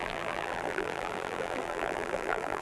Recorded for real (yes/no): no